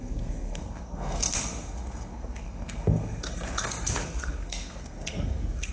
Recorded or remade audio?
remade